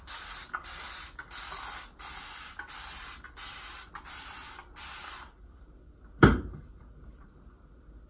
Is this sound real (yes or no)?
yes